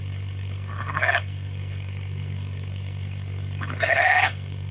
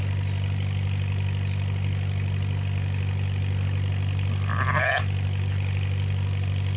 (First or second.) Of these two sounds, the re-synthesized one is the first